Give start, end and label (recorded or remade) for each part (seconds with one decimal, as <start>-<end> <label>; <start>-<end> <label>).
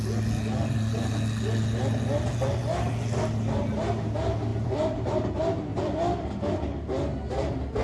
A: 0.0-4.5 recorded; 4.5-5.3 remade; 5.3-5.7 recorded; 5.7-6.5 remade; 6.5-7.8 recorded